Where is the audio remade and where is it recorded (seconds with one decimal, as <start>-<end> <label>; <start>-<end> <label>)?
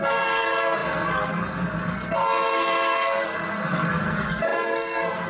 0.0-5.3 remade